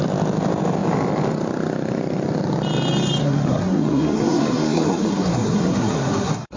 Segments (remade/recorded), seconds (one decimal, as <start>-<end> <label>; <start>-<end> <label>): 0.0-3.2 recorded; 3.2-6.6 remade